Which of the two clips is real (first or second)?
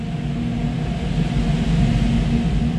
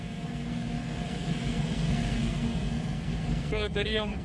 first